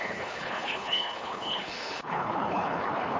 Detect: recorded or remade remade